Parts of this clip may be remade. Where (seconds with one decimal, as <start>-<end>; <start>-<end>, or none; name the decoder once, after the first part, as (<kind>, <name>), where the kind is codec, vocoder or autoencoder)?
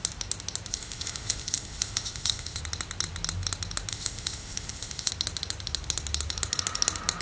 0.7-2.6 (codec, ZipCodec); 3.9-5.1